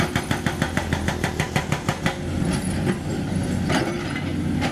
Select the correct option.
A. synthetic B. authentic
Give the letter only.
B